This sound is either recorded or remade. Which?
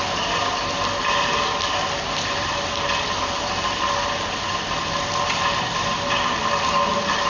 recorded